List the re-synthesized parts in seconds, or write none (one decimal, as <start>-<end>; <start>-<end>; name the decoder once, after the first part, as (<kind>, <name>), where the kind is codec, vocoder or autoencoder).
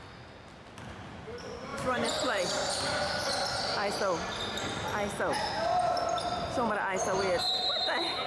1.7-2.8 (vocoder, BigVGAN v2)